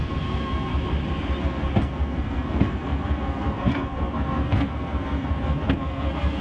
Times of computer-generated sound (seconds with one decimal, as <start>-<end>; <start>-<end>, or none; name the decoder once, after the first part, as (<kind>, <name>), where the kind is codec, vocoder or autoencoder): 0.0-0.7 (codec, SNAC); 1.4-6.4